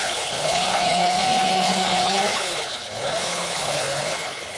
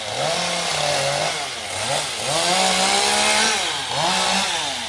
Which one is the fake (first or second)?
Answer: first